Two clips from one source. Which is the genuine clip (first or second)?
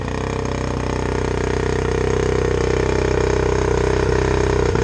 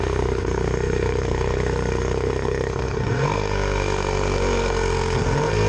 first